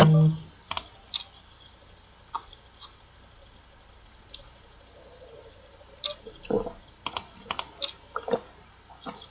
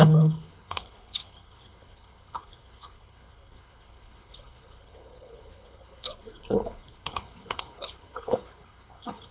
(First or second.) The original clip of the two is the first